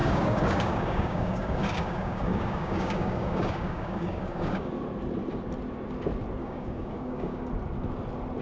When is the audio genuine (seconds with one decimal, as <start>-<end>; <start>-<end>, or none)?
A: 4.7-6.4; 7.5-8.4